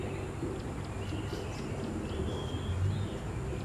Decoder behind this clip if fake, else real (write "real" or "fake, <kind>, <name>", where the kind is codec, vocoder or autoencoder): real